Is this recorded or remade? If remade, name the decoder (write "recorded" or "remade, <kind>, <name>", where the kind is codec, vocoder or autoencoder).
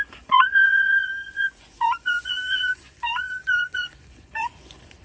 remade, vocoder, Vocos